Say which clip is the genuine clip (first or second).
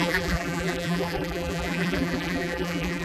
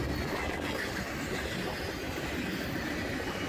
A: second